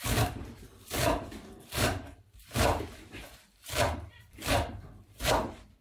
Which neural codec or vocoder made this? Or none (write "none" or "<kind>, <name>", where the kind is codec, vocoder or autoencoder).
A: vocoder, BigVGAN v2